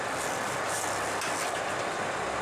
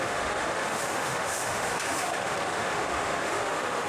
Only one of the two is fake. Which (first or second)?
second